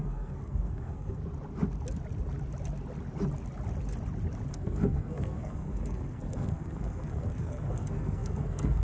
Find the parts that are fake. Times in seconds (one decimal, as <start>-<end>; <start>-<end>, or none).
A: 0.0-1.2; 4.5-8.8